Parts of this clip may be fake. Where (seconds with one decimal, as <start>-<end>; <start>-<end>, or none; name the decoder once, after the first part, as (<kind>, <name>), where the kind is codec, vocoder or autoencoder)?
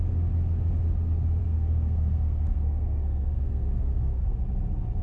1.4-4.4 (codec, SNAC)